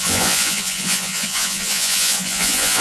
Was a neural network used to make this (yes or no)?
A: yes